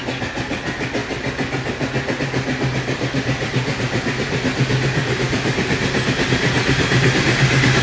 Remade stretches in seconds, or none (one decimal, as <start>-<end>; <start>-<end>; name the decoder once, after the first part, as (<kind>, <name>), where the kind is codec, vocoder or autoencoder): none